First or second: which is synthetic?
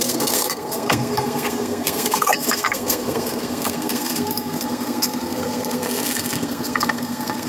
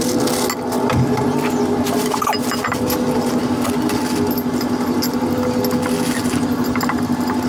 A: first